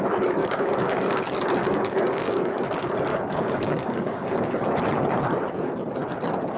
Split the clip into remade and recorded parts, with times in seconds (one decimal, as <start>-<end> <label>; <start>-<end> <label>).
0.0-0.4 recorded; 0.4-1.2 remade; 1.2-1.6 recorded; 1.6-2.5 remade; 2.5-3.1 recorded; 3.1-4.5 remade; 4.5-6.6 recorded